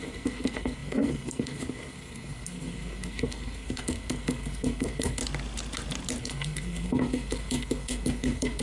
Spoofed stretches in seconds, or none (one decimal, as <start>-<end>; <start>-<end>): 0.0-5.2; 6.2-8.6